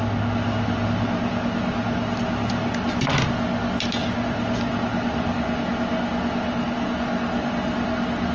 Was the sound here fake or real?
real